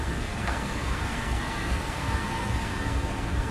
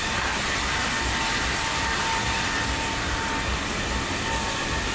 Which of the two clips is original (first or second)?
second